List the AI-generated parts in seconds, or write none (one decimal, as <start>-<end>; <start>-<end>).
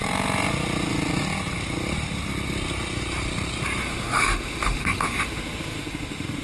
3.8-6.4